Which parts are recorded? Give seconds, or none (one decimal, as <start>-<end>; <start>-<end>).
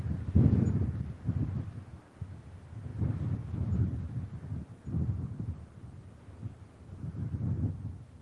0.0-8.2